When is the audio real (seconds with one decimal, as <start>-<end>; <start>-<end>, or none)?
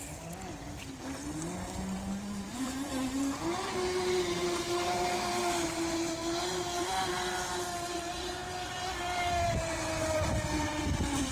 0.0-11.3